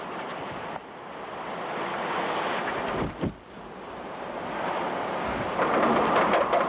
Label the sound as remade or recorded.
recorded